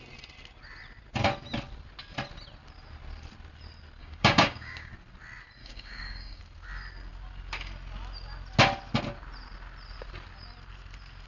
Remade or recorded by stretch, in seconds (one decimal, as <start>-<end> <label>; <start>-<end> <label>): 0.0-4.0 recorded; 4.0-4.9 remade; 4.9-5.6 recorded; 5.6-6.4 remade; 6.4-11.3 recorded